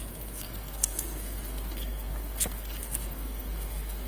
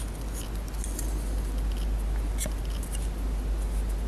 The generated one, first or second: first